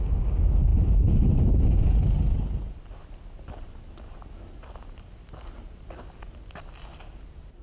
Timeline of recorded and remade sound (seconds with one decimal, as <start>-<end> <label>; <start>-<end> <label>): 0.0-7.6 recorded